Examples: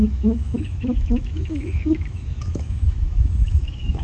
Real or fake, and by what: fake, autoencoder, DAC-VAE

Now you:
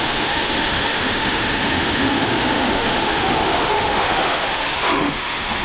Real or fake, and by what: fake, autoencoder, DAC-VAE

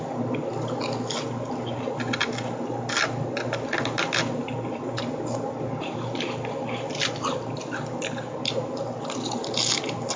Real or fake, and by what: real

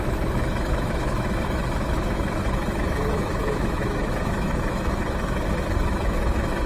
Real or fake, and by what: fake, autoencoder, DAC-VAE